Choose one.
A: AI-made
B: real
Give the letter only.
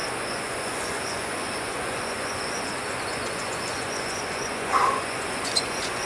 A